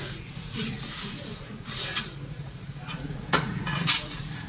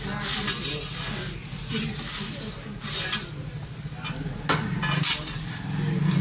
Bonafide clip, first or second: second